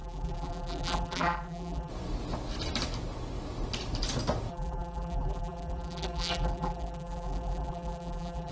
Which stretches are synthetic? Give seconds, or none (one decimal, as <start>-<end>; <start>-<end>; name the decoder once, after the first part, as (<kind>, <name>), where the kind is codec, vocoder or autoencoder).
0.0-1.9 (vocoder, BigVGAN v2); 4.5-8.5